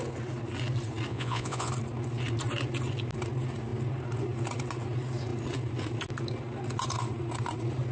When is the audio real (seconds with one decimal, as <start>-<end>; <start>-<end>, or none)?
0.0-1.1; 1.7-7.9